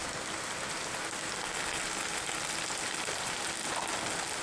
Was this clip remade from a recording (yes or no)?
no